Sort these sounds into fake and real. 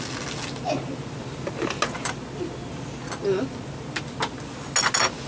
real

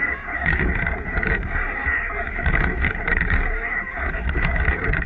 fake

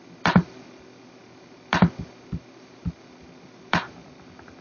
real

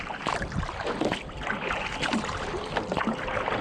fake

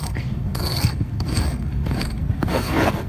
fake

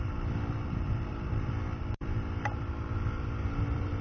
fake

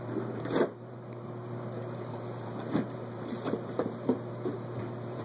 fake